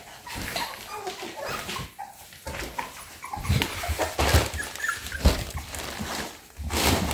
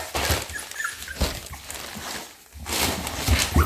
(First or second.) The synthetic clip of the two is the first